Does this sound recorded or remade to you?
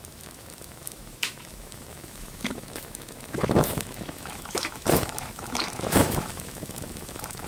remade